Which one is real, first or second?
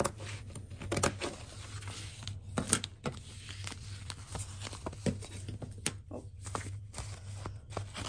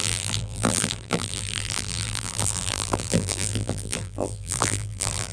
first